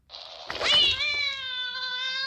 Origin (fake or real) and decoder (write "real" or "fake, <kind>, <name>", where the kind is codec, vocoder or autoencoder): real